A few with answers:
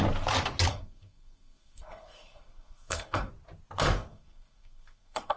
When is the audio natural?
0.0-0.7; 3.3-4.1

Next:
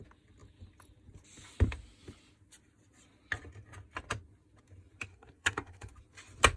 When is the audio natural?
0.0-5.1; 5.9-6.6

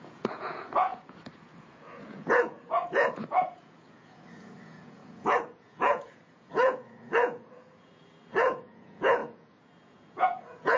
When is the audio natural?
none

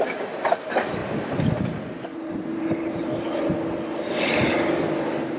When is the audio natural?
0.0-1.0; 1.7-2.1; 3.5-3.9; 4.8-5.4

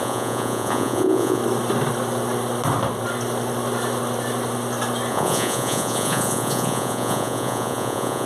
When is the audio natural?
1.4-5.1

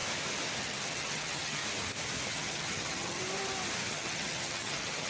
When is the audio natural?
0.0-0.6; 1.6-2.3; 3.2-3.9

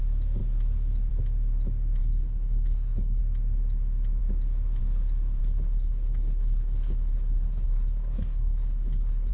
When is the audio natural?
0.0-2.0; 3.2-5.4

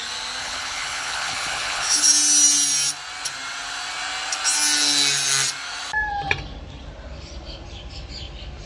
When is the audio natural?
0.0-0.4; 2.1-8.7